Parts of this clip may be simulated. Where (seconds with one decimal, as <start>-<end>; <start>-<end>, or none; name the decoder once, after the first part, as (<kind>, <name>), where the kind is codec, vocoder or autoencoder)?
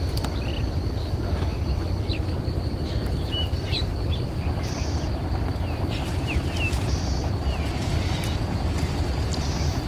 none